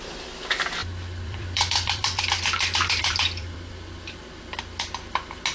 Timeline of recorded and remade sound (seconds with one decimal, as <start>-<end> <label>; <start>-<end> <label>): 0.0-0.8 recorded; 0.8-2.2 remade; 2.2-3.0 recorded; 3.0-3.7 remade; 3.7-5.5 recorded